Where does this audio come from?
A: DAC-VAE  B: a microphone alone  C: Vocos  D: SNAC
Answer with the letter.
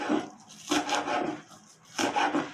B